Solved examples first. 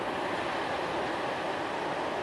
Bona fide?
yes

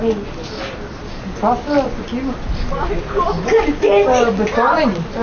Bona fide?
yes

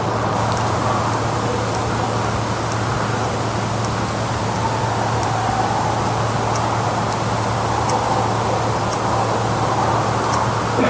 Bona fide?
yes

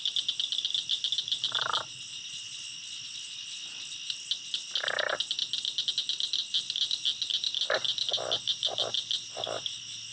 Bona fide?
yes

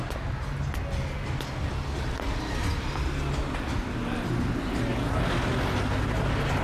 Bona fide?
yes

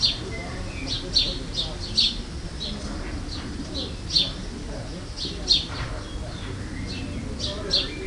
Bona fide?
yes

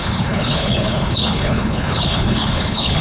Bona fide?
no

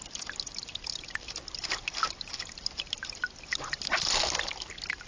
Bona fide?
yes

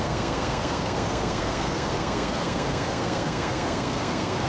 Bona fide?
no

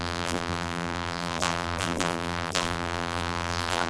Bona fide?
no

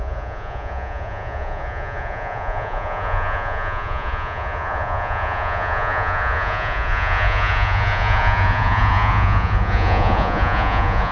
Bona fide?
no